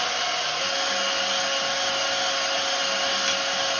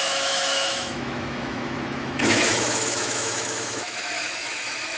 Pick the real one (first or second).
first